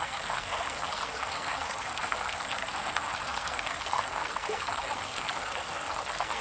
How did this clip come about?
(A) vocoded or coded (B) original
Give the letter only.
A